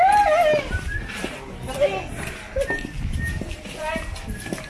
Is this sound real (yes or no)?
yes